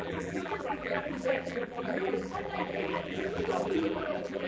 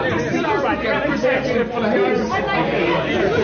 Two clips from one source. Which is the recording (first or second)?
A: second